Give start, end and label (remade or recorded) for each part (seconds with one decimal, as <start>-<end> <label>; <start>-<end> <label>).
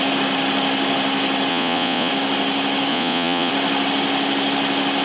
0.0-1.5 recorded; 1.5-2.1 remade; 2.1-2.9 recorded; 2.9-3.5 remade; 3.5-5.0 recorded